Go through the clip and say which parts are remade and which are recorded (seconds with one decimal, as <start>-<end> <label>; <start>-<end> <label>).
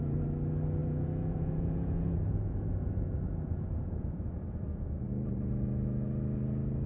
0.0-0.8 recorded; 0.8-4.9 remade; 4.9-6.9 recorded